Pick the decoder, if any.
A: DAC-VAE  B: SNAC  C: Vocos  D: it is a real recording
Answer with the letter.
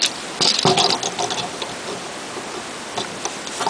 D